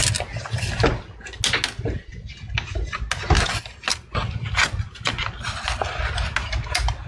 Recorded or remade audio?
recorded